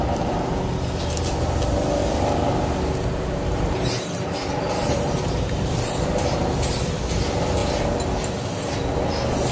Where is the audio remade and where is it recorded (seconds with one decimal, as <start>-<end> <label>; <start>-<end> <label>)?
0.0-2.0 recorded; 2.0-6.2 remade; 6.2-9.5 recorded